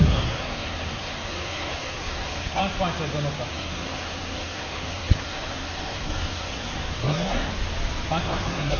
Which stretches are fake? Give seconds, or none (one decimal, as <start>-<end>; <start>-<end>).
0.0-2.6; 3.5-7.5; 8.2-8.8